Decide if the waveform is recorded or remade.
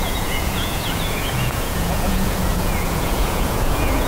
remade